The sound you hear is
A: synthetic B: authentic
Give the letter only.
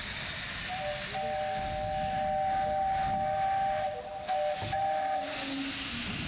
B